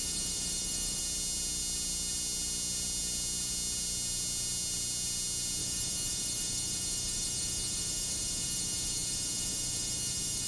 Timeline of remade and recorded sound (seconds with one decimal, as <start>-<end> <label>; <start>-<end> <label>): 0.0-1.0 remade; 1.0-5.6 recorded; 5.6-10.5 remade